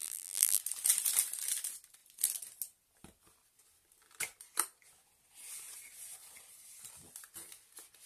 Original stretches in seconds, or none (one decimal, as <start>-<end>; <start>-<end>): 0.6-8.1